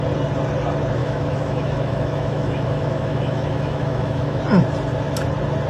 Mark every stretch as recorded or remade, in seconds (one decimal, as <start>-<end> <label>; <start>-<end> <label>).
0.0-1.0 recorded; 1.0-4.4 remade; 4.4-5.7 recorded

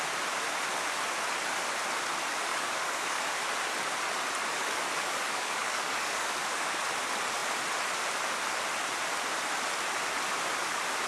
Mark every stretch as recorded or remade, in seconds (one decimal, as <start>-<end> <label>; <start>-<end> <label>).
0.0-2.5 recorded; 2.5-3.4 remade; 3.4-4.4 recorded; 4.4-6.8 remade; 6.8-11.1 recorded

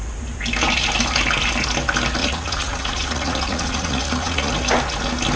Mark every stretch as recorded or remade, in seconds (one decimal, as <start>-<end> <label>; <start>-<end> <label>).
0.0-2.2 recorded; 2.2-4.5 remade; 4.5-5.4 recorded